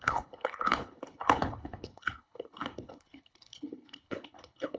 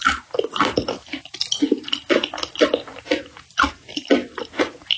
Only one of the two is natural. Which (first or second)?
second